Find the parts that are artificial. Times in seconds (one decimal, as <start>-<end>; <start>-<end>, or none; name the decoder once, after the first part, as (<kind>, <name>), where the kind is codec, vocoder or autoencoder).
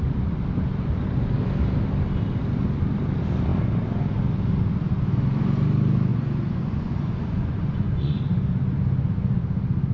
6.1-8.2 (vocoder, Vocos)